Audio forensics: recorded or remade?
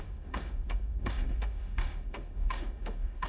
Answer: remade